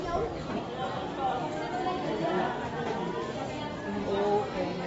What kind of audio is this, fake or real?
real